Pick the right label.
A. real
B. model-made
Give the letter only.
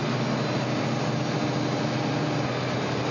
A